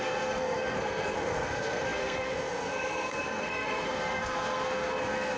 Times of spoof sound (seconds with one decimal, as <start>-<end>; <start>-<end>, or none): 0.0-5.4